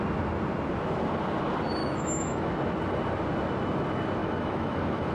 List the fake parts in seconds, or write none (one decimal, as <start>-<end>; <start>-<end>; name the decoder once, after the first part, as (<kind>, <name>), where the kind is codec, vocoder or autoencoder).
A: 1.8-2.5 (autoencoder, DAC-VAE); 4.2-5.1